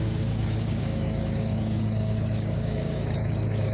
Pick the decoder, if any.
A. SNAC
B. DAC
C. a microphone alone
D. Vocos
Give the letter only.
B